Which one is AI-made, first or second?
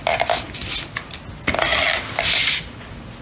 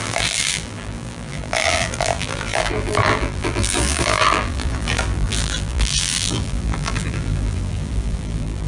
second